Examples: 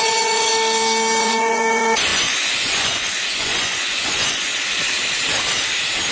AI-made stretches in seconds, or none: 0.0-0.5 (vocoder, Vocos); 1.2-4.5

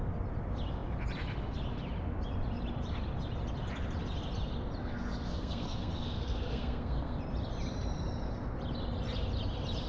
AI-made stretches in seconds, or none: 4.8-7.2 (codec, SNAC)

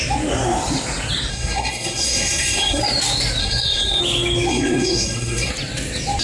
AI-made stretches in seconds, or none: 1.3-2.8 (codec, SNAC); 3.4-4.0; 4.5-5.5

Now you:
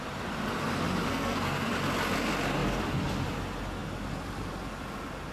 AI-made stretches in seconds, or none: 1.1-1.7 (codec, SNAC)